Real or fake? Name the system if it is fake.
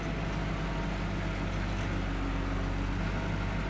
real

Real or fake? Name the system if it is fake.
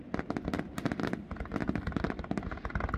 real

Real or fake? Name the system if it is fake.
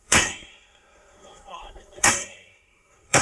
fake, codec, SNAC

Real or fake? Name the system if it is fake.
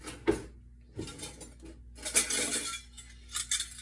real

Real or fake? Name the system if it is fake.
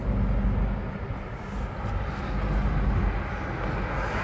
real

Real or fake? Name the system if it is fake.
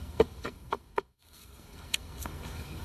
fake, codec, SNAC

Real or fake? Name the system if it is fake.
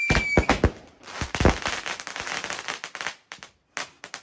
real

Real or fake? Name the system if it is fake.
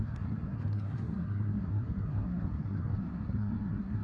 fake, codec, SNAC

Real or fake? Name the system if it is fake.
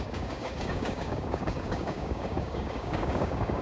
fake, codec, DAC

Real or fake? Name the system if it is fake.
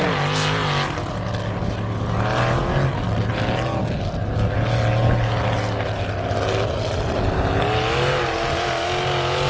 real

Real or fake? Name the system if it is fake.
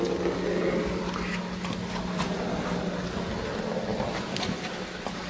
real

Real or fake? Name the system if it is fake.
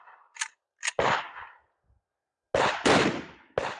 real